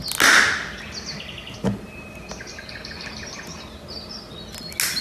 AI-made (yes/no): no